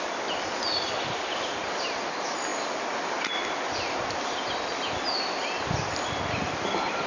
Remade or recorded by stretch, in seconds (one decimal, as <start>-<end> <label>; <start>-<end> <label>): 0.0-7.1 recorded